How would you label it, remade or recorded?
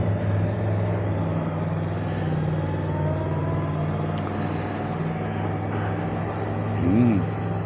recorded